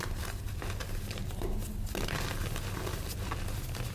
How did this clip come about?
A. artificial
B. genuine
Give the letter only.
B